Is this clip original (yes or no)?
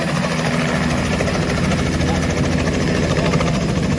yes